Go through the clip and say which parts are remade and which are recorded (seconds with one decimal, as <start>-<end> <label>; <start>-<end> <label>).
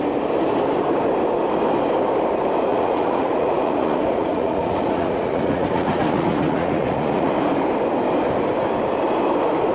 0.0-2.7 recorded; 2.7-7.3 remade; 7.3-9.7 recorded